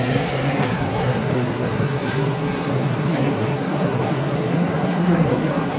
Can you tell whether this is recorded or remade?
remade